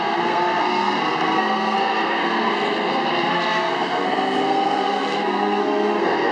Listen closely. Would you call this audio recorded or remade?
remade